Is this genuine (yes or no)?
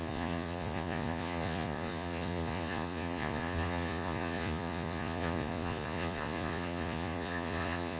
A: no